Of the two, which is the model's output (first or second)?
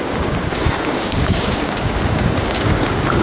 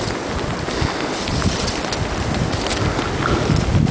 first